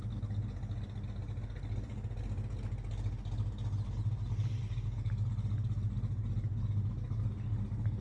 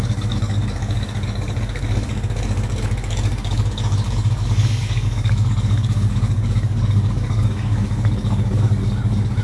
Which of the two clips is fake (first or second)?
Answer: second